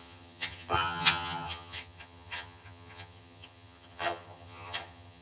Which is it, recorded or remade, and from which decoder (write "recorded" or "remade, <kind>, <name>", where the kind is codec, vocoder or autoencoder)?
remade, vocoder, HiFi-GAN